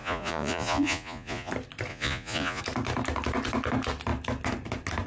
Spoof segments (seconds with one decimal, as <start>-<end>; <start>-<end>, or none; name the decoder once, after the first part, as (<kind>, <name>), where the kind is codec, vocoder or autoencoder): 0.0-1.5 (vocoder, Vocos); 1.9-2.6